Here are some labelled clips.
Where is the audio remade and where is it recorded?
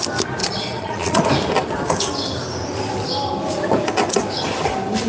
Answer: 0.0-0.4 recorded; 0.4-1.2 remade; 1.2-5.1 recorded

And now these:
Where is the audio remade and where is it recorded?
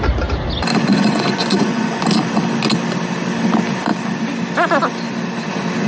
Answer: 0.0-0.9 recorded; 0.9-2.0 remade; 2.0-5.9 recorded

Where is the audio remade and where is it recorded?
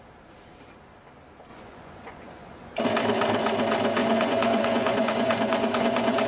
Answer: 0.0-1.5 recorded; 1.5-2.8 remade; 2.8-4.0 recorded; 4.0-6.3 remade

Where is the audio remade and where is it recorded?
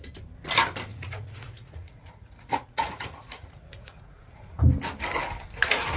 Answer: 0.0-0.9 recorded; 0.9-4.5 remade; 4.5-6.0 recorded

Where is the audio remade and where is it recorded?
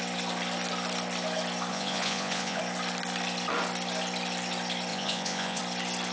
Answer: 0.0-1.7 recorded; 1.7-2.6 remade; 2.6-4.9 recorded; 4.9-5.6 remade; 5.6-6.1 recorded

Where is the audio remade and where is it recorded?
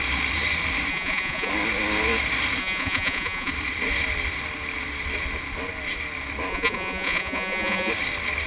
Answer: 0.0-0.9 recorded; 0.9-1.5 remade; 1.5-2.6 recorded; 2.6-3.5 remade; 3.5-6.5 recorded; 6.5-7.9 remade; 7.9-8.5 recorded